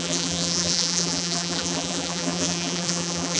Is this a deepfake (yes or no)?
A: yes